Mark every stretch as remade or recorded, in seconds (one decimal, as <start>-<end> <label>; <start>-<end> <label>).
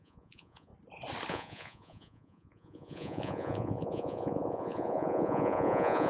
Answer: 0.0-0.7 remade; 0.7-1.3 recorded; 1.3-6.1 remade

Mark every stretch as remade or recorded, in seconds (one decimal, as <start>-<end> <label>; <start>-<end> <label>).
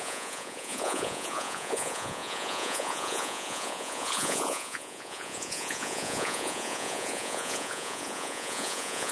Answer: 0.0-9.1 remade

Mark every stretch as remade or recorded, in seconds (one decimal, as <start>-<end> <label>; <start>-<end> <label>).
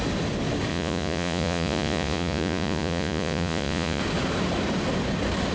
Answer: 0.0-0.7 recorded; 0.7-4.0 remade; 4.0-5.5 recorded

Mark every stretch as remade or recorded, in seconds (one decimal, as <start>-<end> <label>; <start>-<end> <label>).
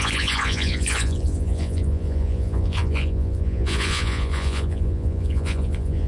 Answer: 0.0-6.1 remade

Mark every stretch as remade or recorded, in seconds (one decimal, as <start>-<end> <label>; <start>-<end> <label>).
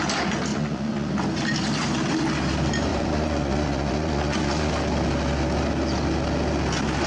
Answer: 0.0-0.5 recorded; 0.5-1.1 remade; 1.1-2.9 recorded; 2.9-4.7 remade; 4.7-7.1 recorded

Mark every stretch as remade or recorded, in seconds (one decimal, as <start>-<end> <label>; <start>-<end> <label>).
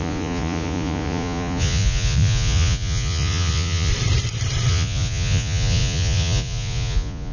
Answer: 0.0-3.9 remade; 3.9-4.7 recorded; 4.7-7.3 remade